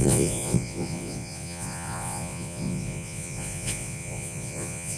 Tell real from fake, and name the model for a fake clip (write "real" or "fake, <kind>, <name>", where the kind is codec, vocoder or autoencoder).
fake, vocoder, Vocos